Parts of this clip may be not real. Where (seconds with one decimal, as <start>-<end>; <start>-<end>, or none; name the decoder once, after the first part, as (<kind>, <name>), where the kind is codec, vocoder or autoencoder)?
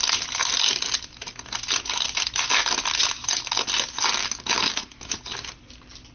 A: 4.2-5.1 (autoencoder, DAC-VAE)